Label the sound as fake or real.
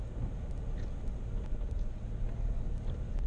real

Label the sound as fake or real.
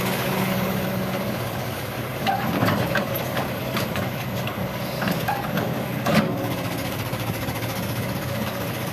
fake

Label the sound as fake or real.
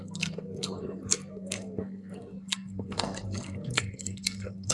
fake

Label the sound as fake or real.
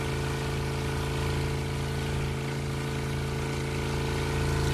real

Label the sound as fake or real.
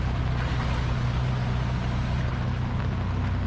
real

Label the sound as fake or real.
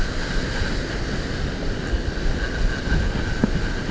real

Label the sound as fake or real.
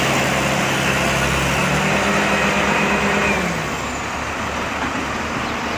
real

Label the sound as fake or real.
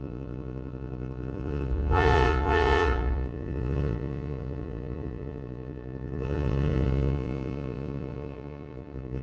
fake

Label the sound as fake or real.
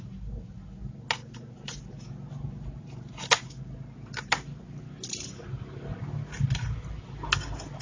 real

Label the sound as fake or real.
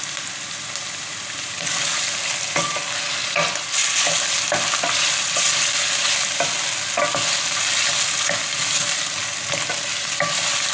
real